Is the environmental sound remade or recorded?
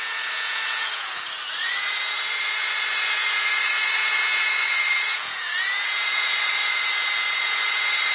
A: remade